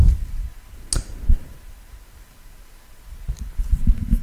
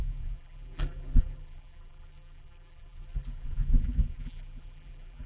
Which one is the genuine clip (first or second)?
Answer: first